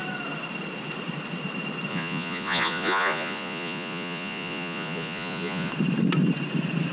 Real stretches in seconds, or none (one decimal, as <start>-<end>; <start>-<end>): 0.0-1.9; 5.7-6.9